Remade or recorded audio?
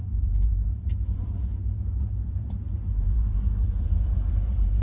remade